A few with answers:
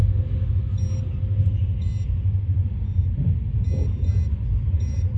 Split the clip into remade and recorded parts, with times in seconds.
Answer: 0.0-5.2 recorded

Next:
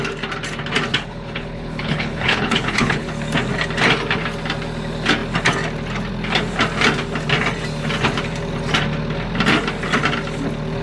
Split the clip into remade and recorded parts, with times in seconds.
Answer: 0.0-0.9 recorded; 0.9-3.1 remade; 3.1-10.8 recorded